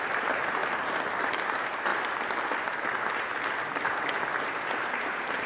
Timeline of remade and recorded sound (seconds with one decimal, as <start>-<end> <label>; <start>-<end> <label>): 0.0-1.9 remade; 1.9-4.4 recorded; 4.4-5.5 remade